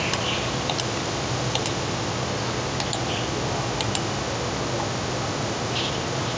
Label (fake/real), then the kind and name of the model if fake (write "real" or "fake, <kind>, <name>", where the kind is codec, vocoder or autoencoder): real